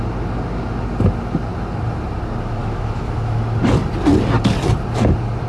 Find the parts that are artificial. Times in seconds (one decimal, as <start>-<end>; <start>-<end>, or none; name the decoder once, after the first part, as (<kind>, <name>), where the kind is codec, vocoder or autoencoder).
2.6-3.4 (autoencoder, DAC-VAE)